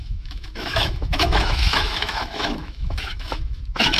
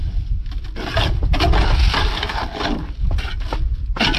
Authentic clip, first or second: second